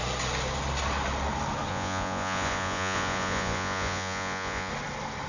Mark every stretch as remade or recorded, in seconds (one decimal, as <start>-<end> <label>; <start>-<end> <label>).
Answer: 0.0-1.7 recorded; 1.7-4.7 remade; 4.7-5.3 recorded